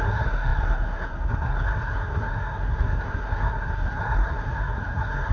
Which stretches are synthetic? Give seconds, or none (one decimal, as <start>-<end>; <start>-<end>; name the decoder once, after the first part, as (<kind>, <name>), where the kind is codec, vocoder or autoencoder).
0.0-5.3 (codec, SNAC)